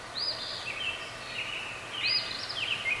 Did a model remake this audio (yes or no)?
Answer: no